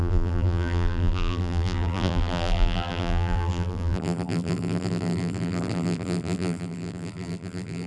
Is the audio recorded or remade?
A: remade